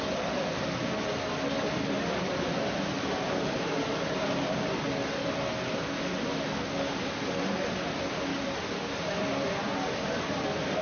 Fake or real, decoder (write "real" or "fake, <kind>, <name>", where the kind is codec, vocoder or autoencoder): real